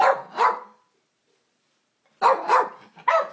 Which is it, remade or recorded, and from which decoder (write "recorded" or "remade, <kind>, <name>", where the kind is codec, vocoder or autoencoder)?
recorded